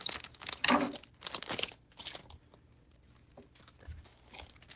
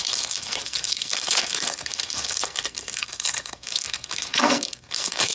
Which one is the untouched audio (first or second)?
first